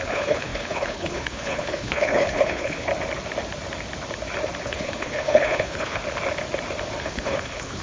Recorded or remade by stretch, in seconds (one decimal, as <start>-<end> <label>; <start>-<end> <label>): 0.0-2.9 remade; 2.9-4.6 recorded; 4.6-6.0 remade; 6.0-7.0 recorded; 7.0-7.8 remade